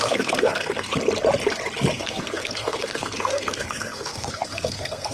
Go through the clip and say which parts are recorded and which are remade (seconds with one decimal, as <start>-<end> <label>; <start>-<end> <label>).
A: 0.0-0.9 remade; 0.9-1.9 recorded; 1.9-5.1 remade